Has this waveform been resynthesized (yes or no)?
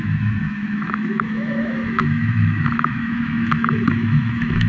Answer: yes